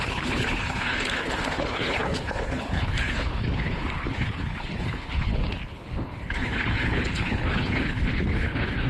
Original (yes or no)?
no